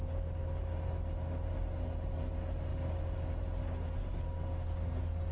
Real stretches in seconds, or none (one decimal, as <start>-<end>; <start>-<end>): 0.0-5.3